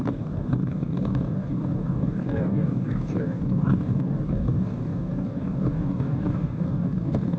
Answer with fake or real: fake